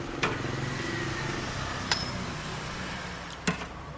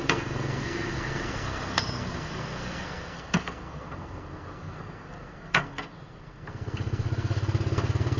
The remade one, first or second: second